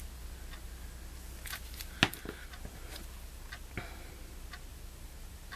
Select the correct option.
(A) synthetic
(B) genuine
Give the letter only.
B